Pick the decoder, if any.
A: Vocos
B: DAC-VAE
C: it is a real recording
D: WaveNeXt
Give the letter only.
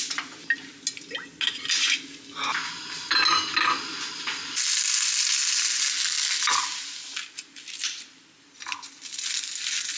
C